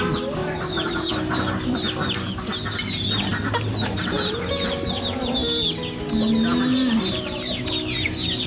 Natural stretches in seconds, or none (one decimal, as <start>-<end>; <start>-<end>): 0.0-0.4; 1.1-3.3; 4.7-6.5